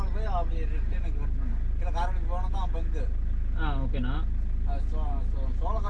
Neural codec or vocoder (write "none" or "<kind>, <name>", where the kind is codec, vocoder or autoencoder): none